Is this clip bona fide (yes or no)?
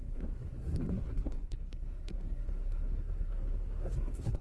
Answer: no